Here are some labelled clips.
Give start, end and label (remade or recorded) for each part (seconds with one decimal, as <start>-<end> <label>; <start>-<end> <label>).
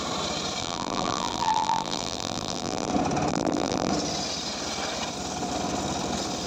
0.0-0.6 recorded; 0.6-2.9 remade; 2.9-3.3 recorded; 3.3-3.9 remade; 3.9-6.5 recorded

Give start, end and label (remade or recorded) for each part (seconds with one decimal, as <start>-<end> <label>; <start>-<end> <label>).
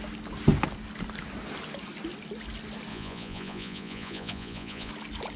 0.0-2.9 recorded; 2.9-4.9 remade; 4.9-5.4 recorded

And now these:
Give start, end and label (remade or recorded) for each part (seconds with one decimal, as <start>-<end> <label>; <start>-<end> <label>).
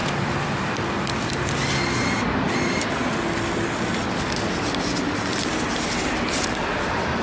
0.0-3.0 remade; 3.0-6.0 recorded; 6.0-7.2 remade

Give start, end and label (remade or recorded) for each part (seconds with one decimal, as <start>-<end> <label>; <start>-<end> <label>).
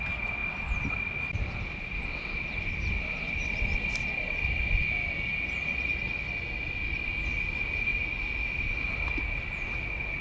0.0-10.2 recorded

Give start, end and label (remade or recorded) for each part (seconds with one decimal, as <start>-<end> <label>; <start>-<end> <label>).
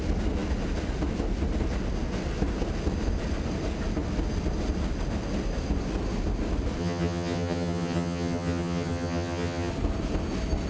0.0-6.8 recorded; 6.8-9.7 remade; 9.7-10.7 recorded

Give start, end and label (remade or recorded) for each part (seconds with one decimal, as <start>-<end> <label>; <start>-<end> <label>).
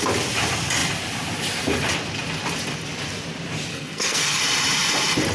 0.0-3.7 recorded; 3.7-4.4 remade; 4.4-5.3 recorded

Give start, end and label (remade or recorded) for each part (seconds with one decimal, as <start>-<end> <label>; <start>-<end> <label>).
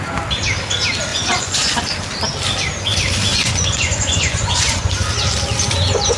0.0-1.1 recorded; 1.1-1.8 remade; 1.8-3.3 recorded; 3.3-4.9 remade; 4.9-6.2 recorded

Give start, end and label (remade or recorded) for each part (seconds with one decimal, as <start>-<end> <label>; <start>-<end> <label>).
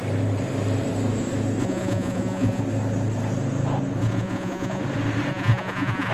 0.0-1.6 recorded; 1.6-2.6 remade; 2.6-4.0 recorded; 4.0-4.8 remade; 4.8-5.3 recorded; 5.3-6.1 remade